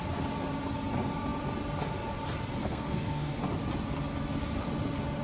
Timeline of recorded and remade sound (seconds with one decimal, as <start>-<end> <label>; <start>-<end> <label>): 0.0-2.6 recorded; 2.6-3.4 remade; 3.4-5.2 recorded